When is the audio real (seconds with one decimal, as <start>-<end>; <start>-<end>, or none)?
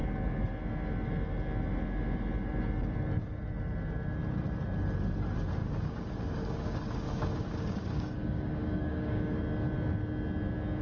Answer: 0.0-5.6; 9.4-10.8